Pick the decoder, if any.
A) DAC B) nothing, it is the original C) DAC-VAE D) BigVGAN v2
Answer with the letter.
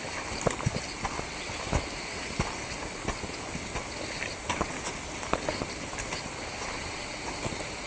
B